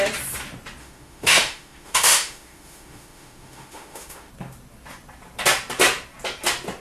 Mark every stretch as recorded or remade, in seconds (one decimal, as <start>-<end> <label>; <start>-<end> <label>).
0.0-0.8 recorded; 0.8-4.3 remade; 4.3-6.8 recorded